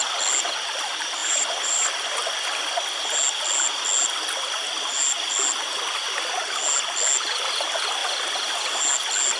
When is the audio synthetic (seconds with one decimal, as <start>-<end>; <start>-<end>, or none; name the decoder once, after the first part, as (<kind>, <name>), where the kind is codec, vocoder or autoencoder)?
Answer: 1.2-1.9 (vocoder, BigVGAN v2); 8.0-8.8